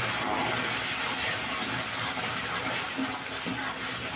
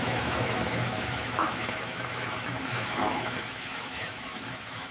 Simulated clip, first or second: second